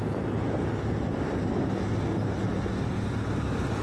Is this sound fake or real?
real